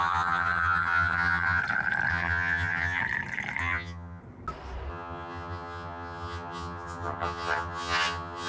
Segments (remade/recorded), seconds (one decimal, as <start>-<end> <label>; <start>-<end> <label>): 0.0-1.6 remade; 1.6-2.1 recorded; 2.1-3.0 remade; 3.0-3.6 recorded; 3.6-4.2 remade; 4.2-4.9 recorded; 4.9-8.5 remade